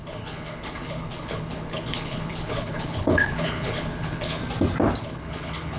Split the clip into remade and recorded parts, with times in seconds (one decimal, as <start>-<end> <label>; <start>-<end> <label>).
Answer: 0.0-4.4 remade; 4.4-5.0 recorded; 5.0-5.8 remade